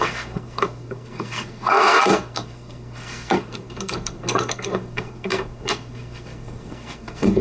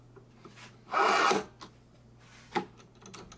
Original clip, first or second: second